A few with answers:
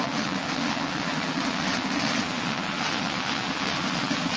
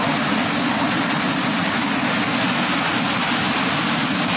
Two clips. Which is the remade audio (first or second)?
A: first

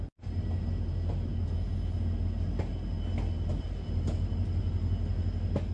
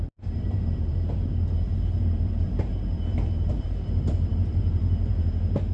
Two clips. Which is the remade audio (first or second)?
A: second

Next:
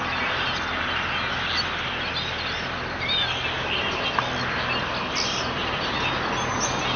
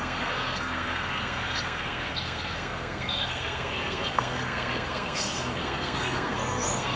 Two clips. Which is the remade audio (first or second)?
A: second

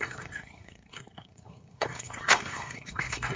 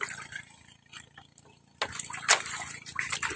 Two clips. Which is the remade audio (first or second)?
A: first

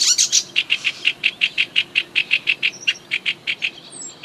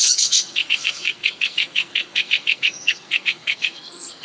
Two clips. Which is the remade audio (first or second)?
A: second